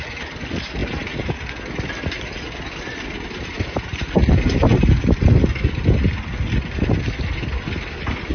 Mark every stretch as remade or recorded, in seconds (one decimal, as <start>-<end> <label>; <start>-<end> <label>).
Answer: 0.0-8.3 recorded